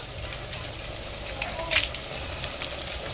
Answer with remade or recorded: recorded